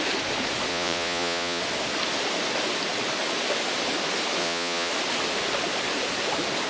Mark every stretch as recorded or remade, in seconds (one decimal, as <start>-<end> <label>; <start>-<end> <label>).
0.0-0.7 recorded; 0.7-1.6 remade; 1.6-4.4 recorded; 4.4-4.9 remade; 4.9-6.7 recorded